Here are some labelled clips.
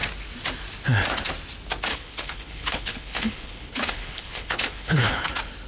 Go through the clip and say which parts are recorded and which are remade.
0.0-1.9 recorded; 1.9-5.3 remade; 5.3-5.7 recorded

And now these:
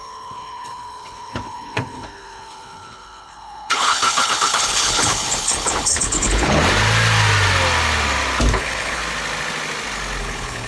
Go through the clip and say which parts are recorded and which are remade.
0.0-6.6 remade; 6.6-8.5 recorded; 8.5-9.0 remade; 9.0-10.2 recorded; 10.2-10.7 remade

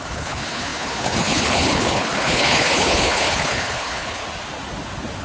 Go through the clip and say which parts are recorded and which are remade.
0.0-4.2 remade; 4.2-5.2 recorded

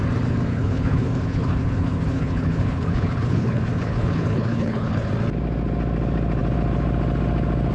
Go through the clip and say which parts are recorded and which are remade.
0.0-0.5 recorded; 0.5-5.1 remade; 5.1-7.7 recorded

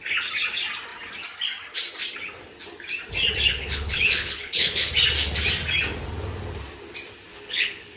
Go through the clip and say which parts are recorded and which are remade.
0.0-3.5 recorded; 3.5-4.9 remade; 4.9-7.3 recorded; 7.3-8.0 remade